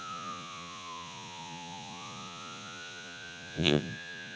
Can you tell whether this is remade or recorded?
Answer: remade